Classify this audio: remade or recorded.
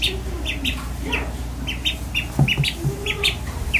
recorded